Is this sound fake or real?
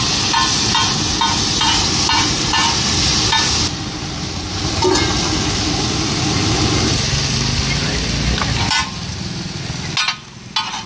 real